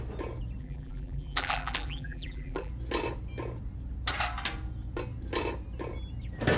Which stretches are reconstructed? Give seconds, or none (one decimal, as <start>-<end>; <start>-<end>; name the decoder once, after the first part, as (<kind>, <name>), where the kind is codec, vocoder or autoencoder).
0.6-2.7 (vocoder, BigVGAN v2)